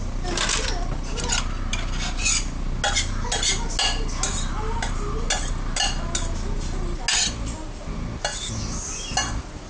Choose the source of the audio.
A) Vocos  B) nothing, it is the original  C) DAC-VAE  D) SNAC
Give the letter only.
B